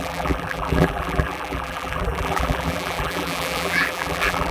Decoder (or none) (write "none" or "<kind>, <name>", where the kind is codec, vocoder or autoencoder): vocoder, BigVGAN v2